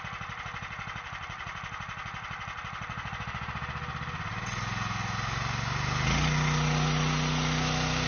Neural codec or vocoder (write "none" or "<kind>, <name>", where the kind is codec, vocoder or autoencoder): none